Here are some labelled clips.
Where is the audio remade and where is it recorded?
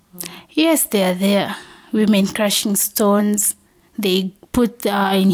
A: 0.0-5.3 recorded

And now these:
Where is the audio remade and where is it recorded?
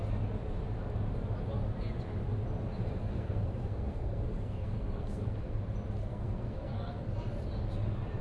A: 0.0-3.0 recorded; 3.0-5.6 remade; 5.6-6.0 recorded; 6.0-7.1 remade; 7.1-8.2 recorded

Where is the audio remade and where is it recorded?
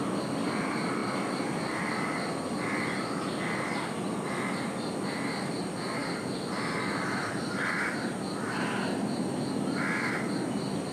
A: 0.0-10.9 recorded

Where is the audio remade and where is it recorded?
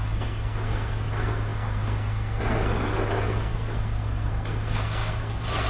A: 0.0-5.7 remade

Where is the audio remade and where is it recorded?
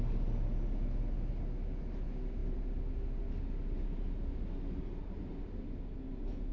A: 0.0-6.5 recorded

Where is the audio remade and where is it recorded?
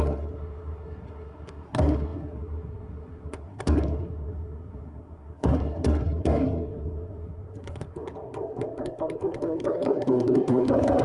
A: 0.0-11.0 remade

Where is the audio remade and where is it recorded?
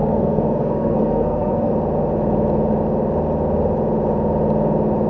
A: 0.0-1.7 remade; 1.7-5.1 recorded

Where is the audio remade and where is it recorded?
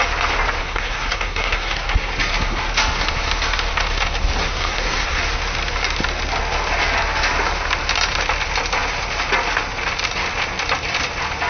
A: 0.0-0.6 recorded; 0.6-2.1 remade; 2.1-4.4 recorded; 4.4-5.2 remade; 5.2-11.5 recorded